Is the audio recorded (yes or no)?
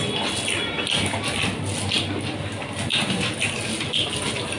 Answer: yes